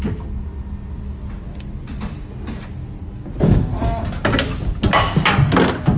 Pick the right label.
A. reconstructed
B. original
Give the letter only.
B